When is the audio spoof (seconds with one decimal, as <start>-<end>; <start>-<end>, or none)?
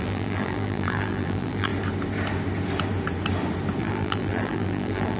0.0-1.7; 3.8-5.2